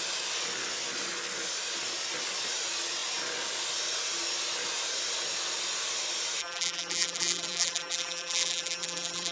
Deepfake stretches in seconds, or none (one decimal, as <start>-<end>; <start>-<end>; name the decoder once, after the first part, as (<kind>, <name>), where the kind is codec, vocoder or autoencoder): 6.4-9.3 (vocoder, BigVGAN v2)